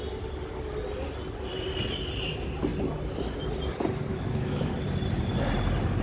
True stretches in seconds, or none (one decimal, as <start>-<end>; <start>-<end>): 0.0-4.1; 4.7-6.0